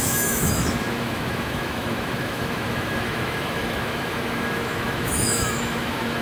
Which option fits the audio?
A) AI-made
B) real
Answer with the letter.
A